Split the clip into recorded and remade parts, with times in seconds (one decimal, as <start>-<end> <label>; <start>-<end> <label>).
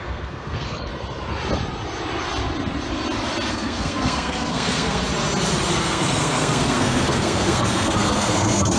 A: 0.0-0.9 remade; 0.9-3.5 recorded; 3.5-5.0 remade; 5.0-5.7 recorded; 5.7-8.8 remade